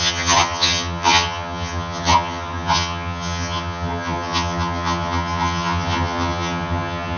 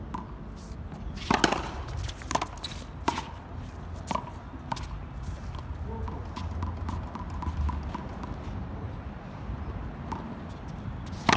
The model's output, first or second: first